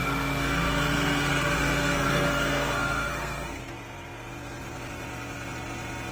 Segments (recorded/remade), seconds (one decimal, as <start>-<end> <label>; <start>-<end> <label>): 0.0-3.6 remade; 3.6-6.1 recorded